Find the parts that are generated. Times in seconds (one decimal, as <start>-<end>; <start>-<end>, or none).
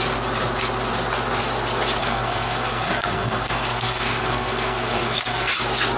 2.0-5.5